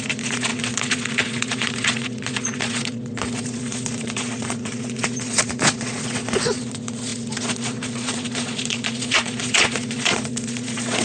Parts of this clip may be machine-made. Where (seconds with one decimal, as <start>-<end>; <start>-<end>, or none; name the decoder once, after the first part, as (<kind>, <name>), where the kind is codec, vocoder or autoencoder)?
0.0-11.0 (vocoder, Vocos)